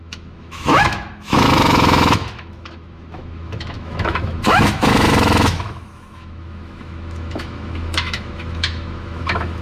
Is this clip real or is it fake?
fake